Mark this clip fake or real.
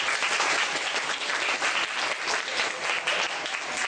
real